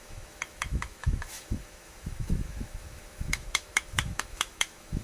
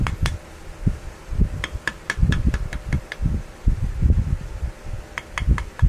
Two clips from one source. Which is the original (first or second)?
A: second